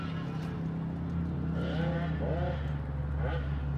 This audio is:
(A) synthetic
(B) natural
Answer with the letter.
B